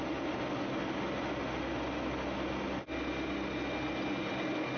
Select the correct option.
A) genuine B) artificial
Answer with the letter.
A